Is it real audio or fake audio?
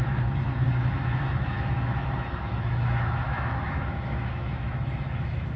fake